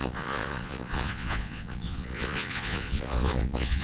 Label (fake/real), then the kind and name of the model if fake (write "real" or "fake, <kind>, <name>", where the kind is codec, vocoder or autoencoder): fake, vocoder, Vocos